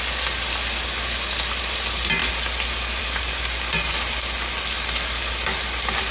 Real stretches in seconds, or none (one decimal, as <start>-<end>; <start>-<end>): 0.0-6.1